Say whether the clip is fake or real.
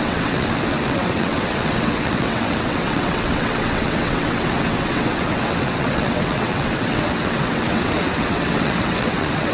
fake